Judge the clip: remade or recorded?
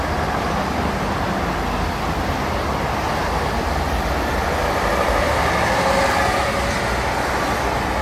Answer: recorded